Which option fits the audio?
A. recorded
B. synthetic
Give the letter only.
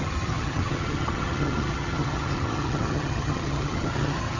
B